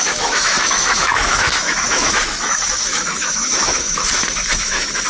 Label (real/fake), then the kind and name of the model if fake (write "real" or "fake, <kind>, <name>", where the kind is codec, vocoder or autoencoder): fake, autoencoder, DAC-VAE